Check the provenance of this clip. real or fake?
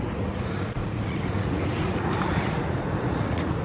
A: fake